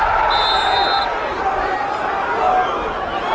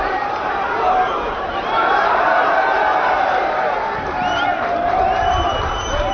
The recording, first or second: first